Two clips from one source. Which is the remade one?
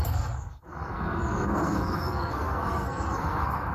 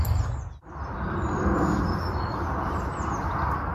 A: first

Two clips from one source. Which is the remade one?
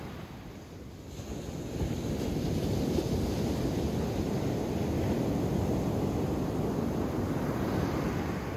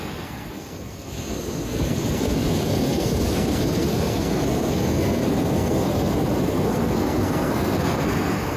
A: second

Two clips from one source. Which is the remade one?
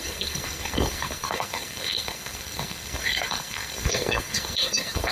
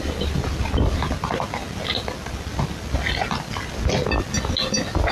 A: first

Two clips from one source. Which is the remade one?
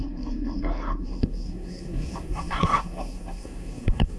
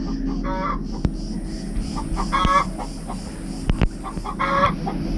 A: first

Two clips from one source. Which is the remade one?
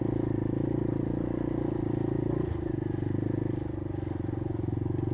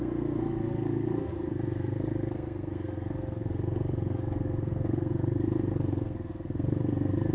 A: second